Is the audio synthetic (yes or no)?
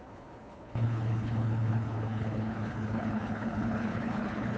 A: yes